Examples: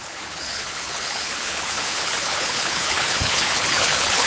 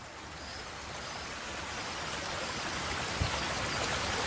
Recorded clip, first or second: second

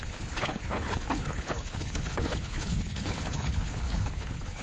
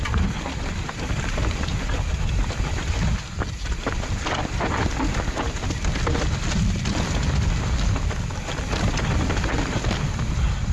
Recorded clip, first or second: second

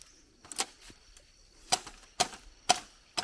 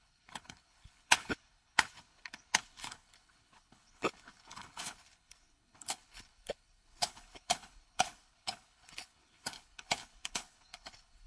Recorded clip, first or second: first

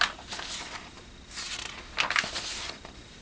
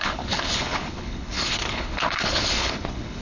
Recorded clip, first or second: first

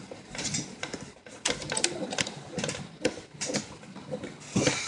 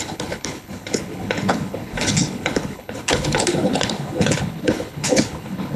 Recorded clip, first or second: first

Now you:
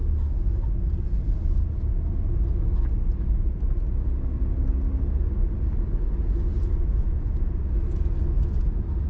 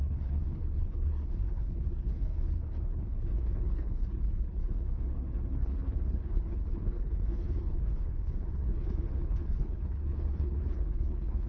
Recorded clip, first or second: first